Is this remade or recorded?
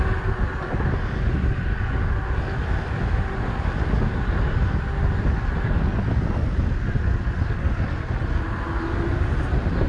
recorded